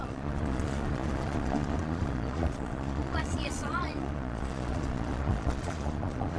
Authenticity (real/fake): fake